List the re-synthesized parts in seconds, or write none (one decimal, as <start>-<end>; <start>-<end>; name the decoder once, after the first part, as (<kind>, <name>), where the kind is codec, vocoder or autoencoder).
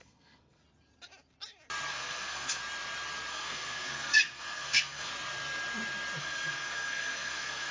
0.0-0.6 (codec, SNAC); 1.9-2.6; 3.3-5.1; 6.2-7.7